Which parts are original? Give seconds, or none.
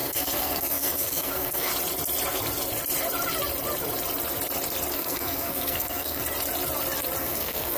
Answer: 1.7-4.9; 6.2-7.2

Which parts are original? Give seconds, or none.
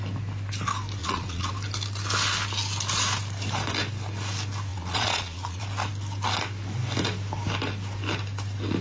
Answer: 0.0-1.0; 1.5-4.7; 5.6-8.8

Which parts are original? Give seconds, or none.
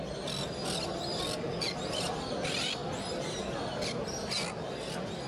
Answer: 0.0-5.3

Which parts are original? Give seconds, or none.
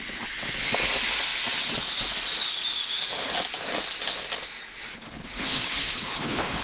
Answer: 0.0-4.9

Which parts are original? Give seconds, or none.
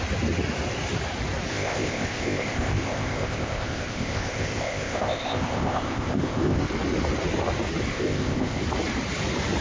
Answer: 0.0-1.5; 6.6-7.9; 8.6-9.6